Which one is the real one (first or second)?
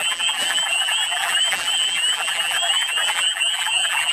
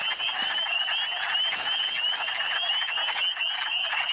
second